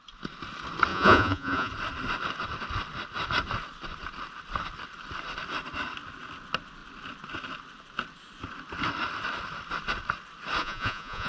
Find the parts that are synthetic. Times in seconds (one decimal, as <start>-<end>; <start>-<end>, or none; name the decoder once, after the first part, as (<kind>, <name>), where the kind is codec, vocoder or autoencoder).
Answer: 0.9-1.7 (vocoder, Vocos); 10.6-11.3